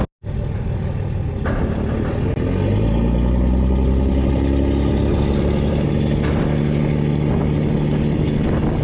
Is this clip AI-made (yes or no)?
no